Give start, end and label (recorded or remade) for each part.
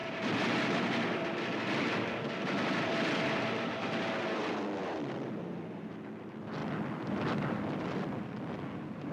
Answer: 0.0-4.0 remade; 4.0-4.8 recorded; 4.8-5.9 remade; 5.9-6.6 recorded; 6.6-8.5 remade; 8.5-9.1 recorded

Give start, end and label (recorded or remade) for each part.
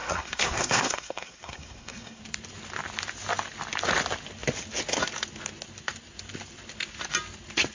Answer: 0.0-2.2 remade; 2.2-7.7 recorded